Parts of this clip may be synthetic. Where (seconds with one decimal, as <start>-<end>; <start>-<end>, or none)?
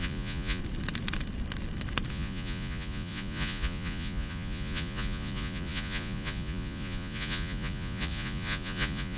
0.0-0.6; 2.1-9.2